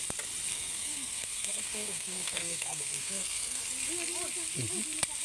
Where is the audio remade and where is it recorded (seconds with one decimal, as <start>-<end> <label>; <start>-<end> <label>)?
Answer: 0.0-0.5 recorded; 0.5-3.6 remade; 3.6-5.2 recorded